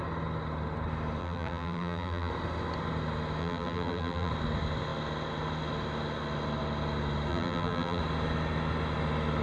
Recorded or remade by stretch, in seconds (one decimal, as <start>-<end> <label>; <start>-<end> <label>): 0.0-1.2 recorded; 1.2-2.3 remade; 2.3-3.4 recorded; 3.4-4.3 remade; 4.3-7.3 recorded; 7.3-8.0 remade; 8.0-9.4 recorded